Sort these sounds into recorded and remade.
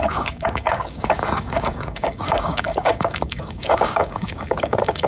remade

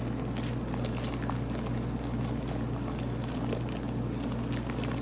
recorded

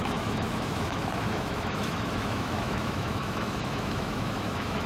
remade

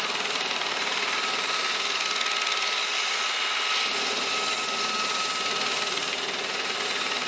recorded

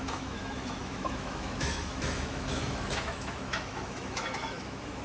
remade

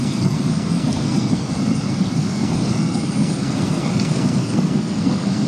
remade